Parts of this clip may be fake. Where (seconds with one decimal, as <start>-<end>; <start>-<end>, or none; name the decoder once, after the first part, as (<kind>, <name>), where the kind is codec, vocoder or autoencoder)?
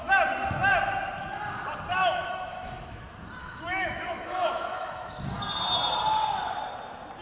1.9-3.0 (autoencoder, DAC-VAE); 3.4-5.2